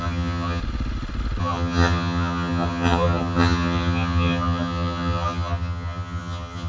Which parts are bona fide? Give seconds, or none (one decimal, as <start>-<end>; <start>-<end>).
0.6-1.4